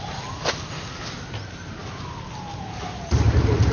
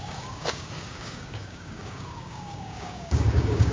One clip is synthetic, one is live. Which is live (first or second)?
first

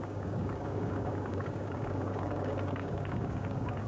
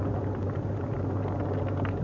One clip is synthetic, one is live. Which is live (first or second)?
second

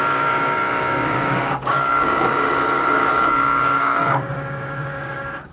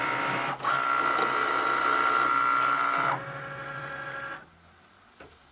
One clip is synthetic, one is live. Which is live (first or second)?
second